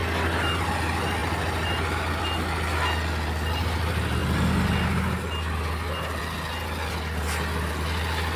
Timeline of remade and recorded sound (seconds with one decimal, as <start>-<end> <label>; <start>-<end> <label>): 0.0-8.4 recorded